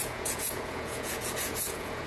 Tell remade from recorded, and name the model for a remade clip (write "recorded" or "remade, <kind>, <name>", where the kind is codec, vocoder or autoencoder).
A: remade, vocoder, Vocos